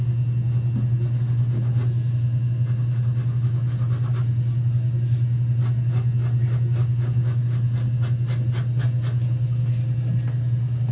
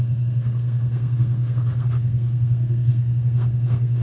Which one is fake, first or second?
second